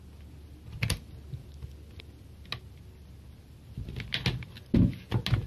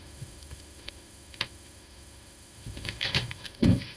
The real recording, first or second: first